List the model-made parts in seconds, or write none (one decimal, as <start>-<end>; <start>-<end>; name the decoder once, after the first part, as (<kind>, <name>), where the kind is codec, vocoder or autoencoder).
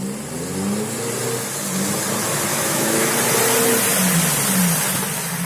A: 2.5-3.1 (autoencoder, DAC-VAE)